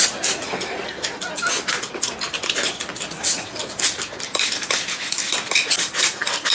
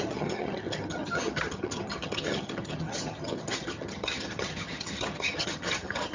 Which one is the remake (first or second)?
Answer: second